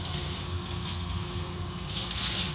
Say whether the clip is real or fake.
fake